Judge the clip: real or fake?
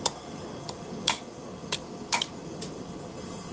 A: real